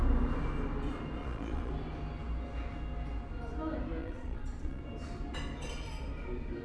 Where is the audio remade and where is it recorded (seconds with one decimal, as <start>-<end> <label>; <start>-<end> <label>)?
0.0-1.2 recorded; 1.2-1.7 remade; 1.7-4.0 recorded; 4.0-4.8 remade; 4.8-6.6 recorded